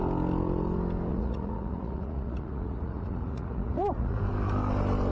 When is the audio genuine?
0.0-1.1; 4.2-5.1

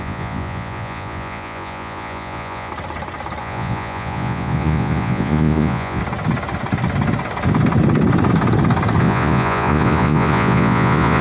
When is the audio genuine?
2.7-3.4; 6.0-9.0

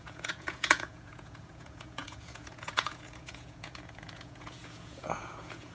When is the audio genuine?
none

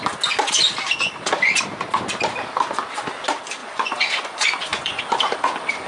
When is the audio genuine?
0.0-3.6; 5.0-5.9